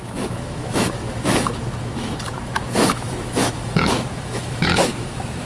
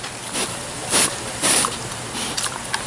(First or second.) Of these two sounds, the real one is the second